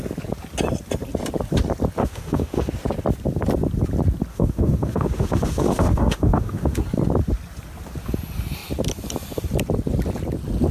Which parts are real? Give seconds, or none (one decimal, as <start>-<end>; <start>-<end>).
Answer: 0.0-2.0; 2.7-4.3; 6.8-10.7